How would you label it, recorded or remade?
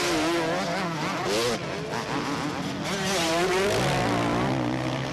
recorded